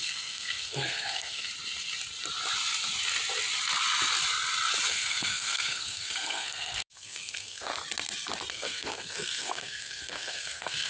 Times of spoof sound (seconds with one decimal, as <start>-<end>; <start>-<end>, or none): 0.0-1.5; 4.9-7.7; 8.5-10.9